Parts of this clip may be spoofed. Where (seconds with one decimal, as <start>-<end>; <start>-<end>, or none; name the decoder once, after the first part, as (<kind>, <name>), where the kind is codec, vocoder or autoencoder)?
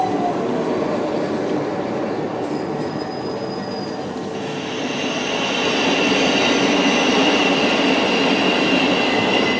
none